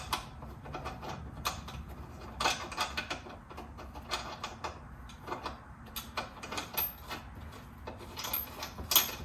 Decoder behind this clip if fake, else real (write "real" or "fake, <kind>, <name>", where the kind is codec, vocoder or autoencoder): real